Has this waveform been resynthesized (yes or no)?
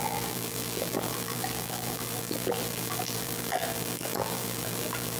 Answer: yes